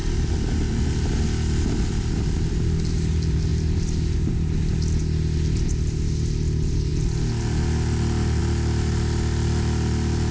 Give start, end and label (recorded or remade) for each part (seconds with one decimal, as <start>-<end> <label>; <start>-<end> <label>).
0.0-10.3 recorded